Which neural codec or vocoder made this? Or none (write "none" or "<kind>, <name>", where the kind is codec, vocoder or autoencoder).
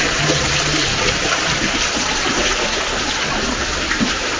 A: none